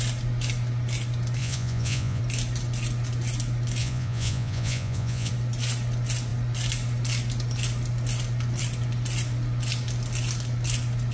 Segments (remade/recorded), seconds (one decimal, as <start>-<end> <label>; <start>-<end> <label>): 0.0-1.4 recorded; 1.4-2.2 remade; 2.2-3.8 recorded; 3.8-5.3 remade; 5.3-11.1 recorded

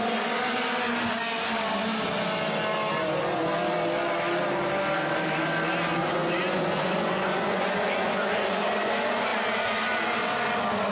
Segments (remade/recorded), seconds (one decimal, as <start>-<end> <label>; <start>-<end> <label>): 0.0-6.0 recorded; 6.0-8.9 remade; 8.9-10.9 recorded

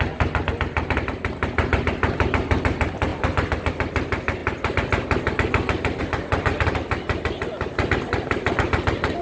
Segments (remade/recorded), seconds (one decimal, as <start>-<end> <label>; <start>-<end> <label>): 0.0-9.2 recorded

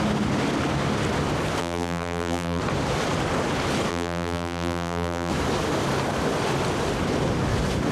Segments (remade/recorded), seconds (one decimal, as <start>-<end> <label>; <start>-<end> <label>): 0.0-1.6 recorded; 1.6-2.6 remade; 2.6-3.9 recorded; 3.9-5.3 remade; 5.3-7.9 recorded

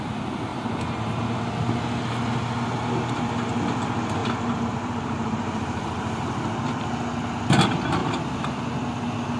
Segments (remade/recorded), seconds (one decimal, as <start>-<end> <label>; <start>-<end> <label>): 0.0-0.5 recorded; 0.5-1.4 remade; 1.4-4.2 recorded; 4.2-6.3 remade; 6.3-8.0 recorded; 8.0-8.7 remade; 8.7-9.4 recorded

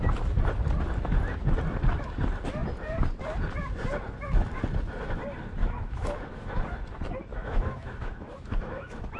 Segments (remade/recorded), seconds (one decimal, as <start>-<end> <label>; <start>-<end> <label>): 0.0-5.6 recorded; 5.6-6.6 remade; 6.6-7.3 recorded; 7.3-9.2 remade

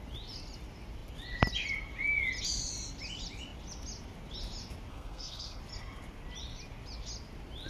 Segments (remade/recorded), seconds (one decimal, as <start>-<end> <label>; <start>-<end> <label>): 0.0-4.9 recorded; 4.9-5.6 remade; 5.6-7.7 recorded